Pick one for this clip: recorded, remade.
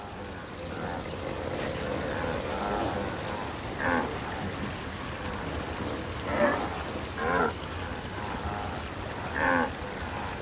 recorded